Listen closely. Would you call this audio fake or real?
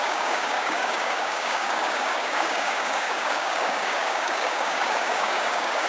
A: fake